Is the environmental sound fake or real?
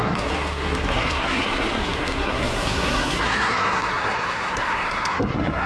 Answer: fake